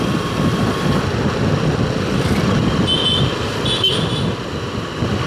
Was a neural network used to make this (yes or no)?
no